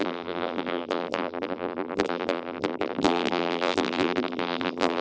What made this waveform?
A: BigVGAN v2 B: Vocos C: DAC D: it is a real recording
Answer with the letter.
A